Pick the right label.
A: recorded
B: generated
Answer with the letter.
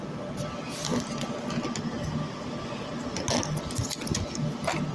A